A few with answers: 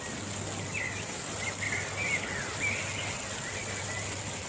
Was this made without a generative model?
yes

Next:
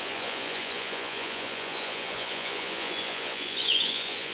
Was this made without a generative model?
no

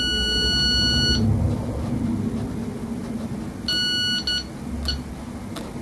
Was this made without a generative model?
yes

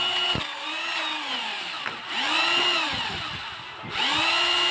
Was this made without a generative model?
yes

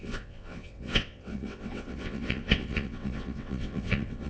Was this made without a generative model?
no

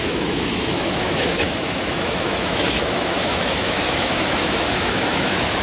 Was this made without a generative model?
no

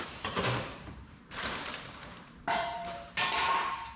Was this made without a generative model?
no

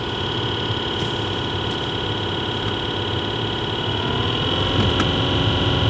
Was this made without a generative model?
yes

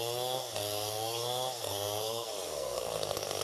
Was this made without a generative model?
no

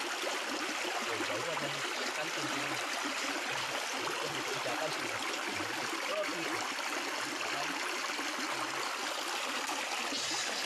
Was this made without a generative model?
yes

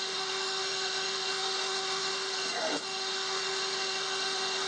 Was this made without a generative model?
no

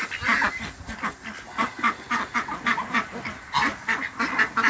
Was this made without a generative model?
yes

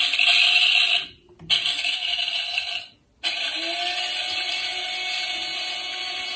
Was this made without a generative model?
yes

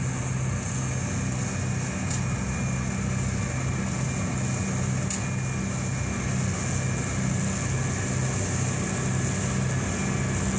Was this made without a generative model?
yes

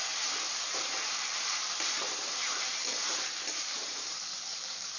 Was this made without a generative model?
no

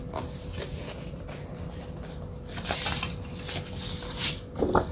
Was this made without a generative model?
yes